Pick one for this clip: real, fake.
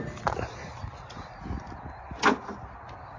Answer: real